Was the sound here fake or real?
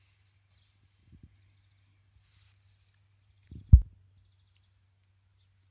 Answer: real